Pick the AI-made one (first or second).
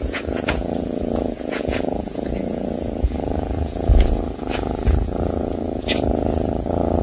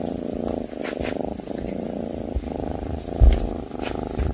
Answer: first